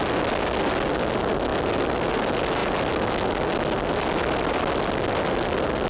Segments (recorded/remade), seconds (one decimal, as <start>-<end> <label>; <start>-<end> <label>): 0.0-5.9 recorded